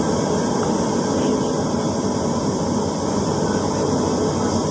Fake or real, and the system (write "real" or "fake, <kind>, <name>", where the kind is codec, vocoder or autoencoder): real